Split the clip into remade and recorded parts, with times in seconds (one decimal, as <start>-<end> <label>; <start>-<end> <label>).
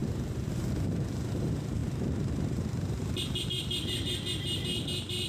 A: 0.0-1.3 recorded; 1.3-4.1 remade; 4.1-5.3 recorded